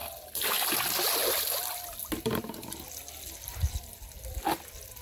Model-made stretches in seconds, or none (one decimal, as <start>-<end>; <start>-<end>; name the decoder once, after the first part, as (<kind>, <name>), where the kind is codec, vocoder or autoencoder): none